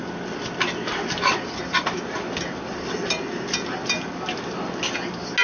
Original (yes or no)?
yes